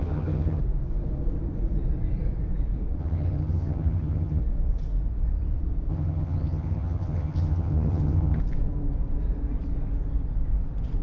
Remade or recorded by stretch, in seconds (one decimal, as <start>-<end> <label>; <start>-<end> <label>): 0.0-0.6 remade; 0.6-3.0 recorded; 3.0-4.4 remade; 4.4-5.9 recorded; 5.9-8.4 remade; 8.4-11.0 recorded